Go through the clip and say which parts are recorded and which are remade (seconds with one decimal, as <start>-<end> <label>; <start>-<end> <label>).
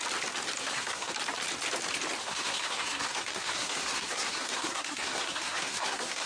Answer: 0.0-0.6 recorded; 0.6-1.1 remade; 1.1-2.2 recorded; 2.2-6.3 remade